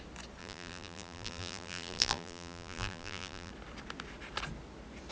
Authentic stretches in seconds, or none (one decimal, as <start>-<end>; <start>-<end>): 0.0-0.4; 3.5-5.1